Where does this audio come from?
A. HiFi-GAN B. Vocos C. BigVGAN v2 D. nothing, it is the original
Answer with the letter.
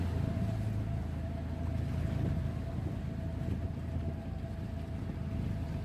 D